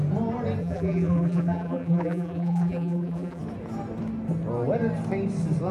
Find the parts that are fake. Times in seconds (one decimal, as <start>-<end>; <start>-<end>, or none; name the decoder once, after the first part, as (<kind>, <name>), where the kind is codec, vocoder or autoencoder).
0.6-3.4 (vocoder, BigVGAN v2)